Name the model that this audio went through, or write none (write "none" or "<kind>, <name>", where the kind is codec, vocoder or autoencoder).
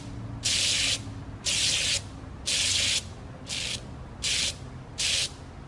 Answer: none